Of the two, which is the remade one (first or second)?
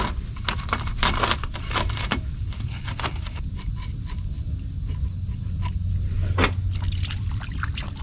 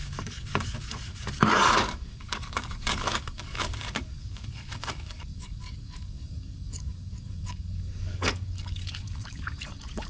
second